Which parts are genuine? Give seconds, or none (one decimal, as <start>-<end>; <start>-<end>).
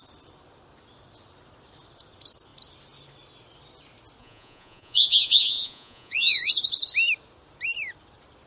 0.0-4.2; 6.5-8.5